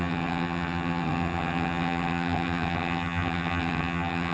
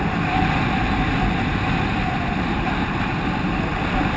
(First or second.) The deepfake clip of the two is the first